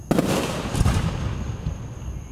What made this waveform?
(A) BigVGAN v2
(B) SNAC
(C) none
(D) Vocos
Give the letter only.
C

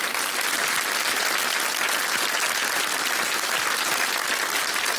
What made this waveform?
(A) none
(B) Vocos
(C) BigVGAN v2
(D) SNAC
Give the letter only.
A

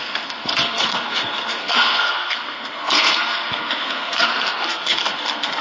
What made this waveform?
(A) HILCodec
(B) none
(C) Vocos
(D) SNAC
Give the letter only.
D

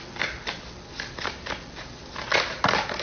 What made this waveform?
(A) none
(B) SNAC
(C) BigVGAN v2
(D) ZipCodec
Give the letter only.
A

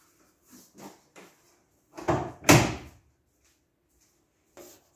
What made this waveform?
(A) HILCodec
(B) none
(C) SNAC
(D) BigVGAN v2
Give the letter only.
B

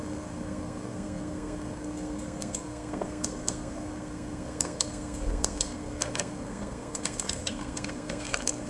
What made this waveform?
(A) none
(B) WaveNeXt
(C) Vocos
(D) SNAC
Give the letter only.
D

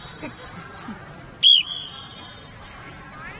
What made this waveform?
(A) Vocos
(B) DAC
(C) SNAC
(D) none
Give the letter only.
D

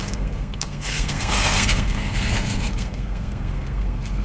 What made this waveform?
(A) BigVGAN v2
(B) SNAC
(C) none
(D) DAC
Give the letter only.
B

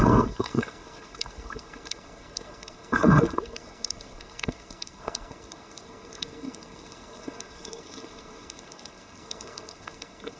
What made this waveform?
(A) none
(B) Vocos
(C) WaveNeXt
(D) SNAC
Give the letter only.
D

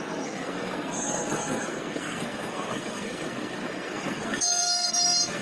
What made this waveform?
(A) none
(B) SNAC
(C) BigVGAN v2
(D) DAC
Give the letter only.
B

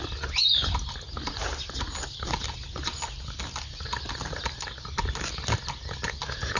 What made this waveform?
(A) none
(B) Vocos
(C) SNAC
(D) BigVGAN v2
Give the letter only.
A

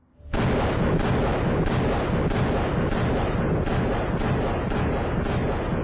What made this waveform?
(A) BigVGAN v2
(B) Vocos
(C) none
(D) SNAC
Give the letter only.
C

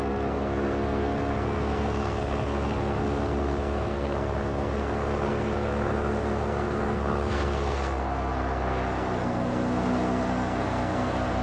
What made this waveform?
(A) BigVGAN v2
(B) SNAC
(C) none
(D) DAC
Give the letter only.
B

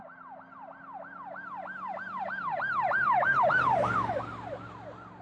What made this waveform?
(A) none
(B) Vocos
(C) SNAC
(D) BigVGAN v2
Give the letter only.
A